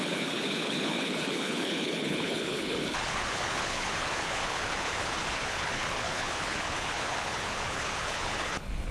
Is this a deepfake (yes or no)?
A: yes